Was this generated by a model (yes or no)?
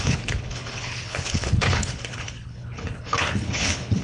yes